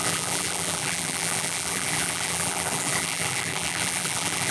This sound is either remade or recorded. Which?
remade